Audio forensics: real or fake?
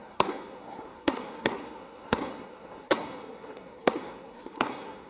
fake